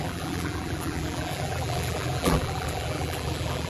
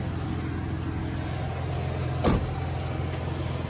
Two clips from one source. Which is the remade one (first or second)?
first